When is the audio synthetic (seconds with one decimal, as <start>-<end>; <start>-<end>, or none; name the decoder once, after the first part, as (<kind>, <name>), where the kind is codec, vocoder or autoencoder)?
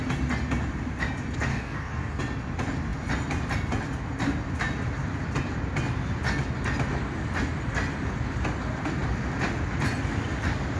1.5-2.2 (codec, DAC)